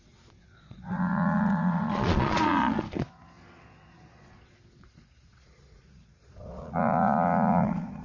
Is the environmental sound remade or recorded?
remade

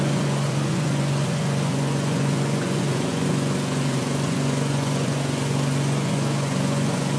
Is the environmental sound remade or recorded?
remade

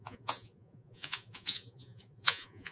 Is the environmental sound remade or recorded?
remade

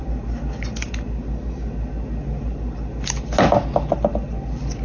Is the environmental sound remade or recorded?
recorded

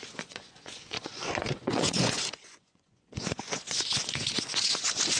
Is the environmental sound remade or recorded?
remade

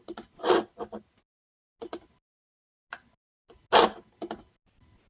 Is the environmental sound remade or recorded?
recorded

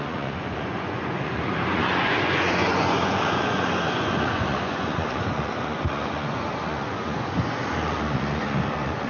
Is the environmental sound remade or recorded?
remade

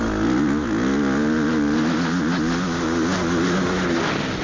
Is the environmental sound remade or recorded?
recorded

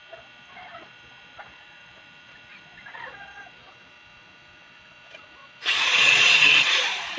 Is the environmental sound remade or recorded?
remade